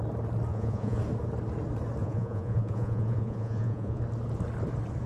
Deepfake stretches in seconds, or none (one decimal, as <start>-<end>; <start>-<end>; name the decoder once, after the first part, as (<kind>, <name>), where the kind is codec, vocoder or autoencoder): 0.5-1.0 (vocoder, Vocos); 2.0-4.0

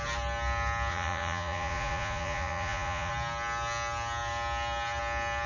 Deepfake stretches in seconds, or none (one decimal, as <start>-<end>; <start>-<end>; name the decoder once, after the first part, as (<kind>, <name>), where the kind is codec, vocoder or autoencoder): 0.9-3.1 (vocoder, Vocos)

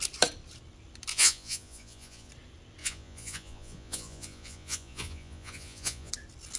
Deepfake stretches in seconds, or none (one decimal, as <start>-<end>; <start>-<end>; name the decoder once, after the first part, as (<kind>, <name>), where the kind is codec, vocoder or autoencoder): 1.1-2.3 (vocoder, Vocos); 2.8-6.1

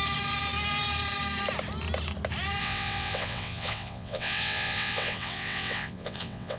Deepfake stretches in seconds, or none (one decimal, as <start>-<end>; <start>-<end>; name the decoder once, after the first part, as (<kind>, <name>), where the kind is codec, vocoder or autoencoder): 2.6-6.6 (vocoder, WaveNeXt)

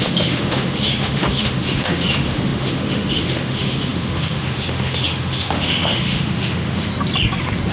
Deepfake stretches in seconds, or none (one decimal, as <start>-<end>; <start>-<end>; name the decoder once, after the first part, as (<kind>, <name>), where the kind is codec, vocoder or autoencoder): 0.0-6.9 (autoencoder, DAC-VAE)

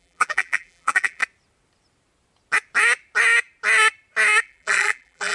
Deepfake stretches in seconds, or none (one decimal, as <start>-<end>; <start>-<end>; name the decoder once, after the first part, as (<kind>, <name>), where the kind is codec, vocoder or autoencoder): 0.0-1.2 (vocoder, BigVGAN v2); 4.4-5.3

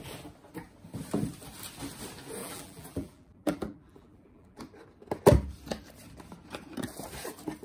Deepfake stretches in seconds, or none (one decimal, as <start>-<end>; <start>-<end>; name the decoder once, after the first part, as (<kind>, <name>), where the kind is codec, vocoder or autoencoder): 2.4-4.6 (vocoder, BigVGAN v2)

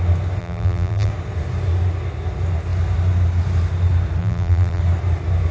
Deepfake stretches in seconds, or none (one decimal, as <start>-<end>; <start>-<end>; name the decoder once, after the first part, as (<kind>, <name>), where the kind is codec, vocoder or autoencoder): 0.4-1.1 (vocoder, BigVGAN v2); 4.2-4.8